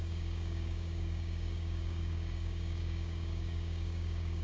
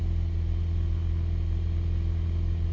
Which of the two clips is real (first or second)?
second